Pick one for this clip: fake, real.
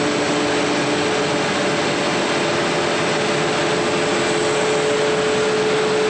real